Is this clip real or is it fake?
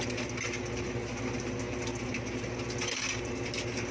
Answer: real